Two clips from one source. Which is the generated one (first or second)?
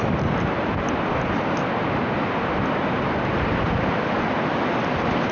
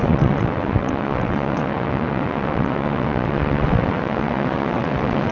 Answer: second